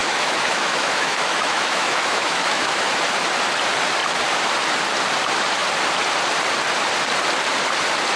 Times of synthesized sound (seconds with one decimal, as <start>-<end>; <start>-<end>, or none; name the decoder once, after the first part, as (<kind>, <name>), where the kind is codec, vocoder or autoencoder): 0.0-2.8 (autoencoder, DAC-VAE)